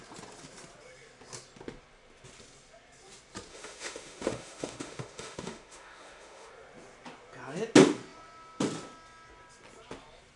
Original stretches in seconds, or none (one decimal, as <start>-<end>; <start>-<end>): 0.0-3.5; 6.5-10.4